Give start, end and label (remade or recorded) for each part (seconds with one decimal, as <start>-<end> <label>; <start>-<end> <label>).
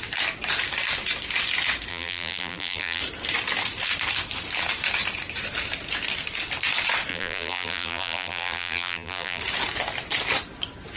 0.0-1.9 recorded; 1.9-3.0 remade; 3.0-7.1 recorded; 7.1-9.4 remade; 9.4-11.0 recorded